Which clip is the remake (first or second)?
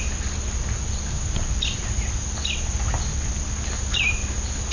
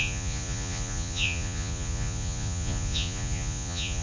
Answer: second